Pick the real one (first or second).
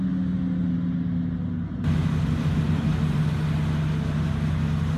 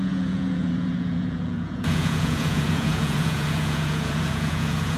first